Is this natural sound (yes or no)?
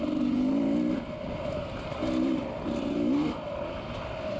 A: yes